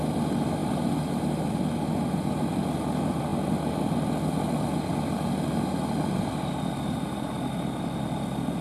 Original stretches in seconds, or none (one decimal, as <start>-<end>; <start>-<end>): 0.0-8.6